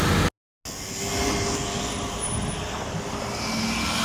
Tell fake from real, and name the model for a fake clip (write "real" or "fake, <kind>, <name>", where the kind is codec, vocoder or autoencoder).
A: real